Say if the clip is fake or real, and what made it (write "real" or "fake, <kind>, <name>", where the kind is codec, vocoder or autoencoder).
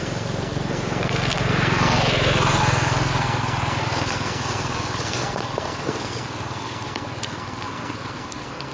fake, codec, SNAC